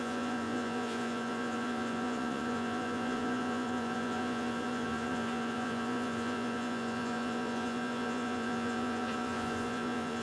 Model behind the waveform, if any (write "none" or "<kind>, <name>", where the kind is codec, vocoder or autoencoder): vocoder, Vocos